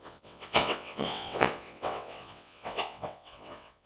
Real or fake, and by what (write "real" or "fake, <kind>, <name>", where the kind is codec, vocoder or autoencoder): fake, vocoder, WaveNeXt